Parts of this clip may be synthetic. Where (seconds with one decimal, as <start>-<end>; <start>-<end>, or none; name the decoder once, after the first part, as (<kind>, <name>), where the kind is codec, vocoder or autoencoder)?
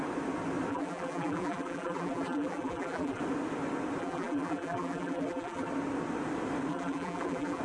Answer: 0.7-3.2 (vocoder, BigVGAN v2); 4.0-5.7; 6.7-7.6